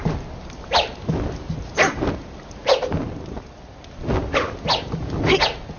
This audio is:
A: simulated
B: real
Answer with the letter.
B